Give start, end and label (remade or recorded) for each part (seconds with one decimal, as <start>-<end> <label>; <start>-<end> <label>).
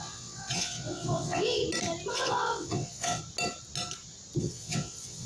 0.0-1.6 remade; 1.6-2.1 recorded; 2.1-3.2 remade; 3.2-4.4 recorded; 4.4-5.3 remade